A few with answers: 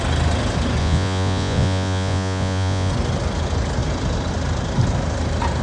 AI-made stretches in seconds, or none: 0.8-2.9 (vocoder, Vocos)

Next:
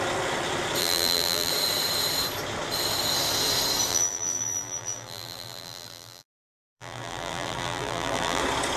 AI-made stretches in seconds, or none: 0.8-1.5 (vocoder, BigVGAN v2); 3.9-8.4

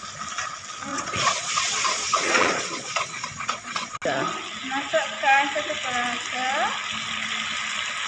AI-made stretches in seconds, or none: 0.9-4.0 (vocoder, Vocos)

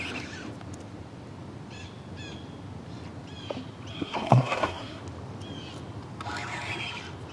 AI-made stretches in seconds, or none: 3.9-5.0 (codec, SNAC)

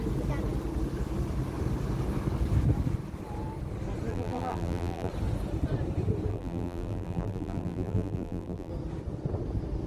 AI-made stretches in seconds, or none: 4.1-5.1 (vocoder, BigVGAN v2); 6.3-8.7